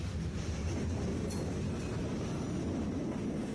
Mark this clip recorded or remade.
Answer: recorded